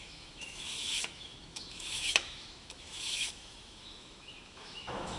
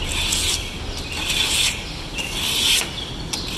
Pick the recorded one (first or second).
second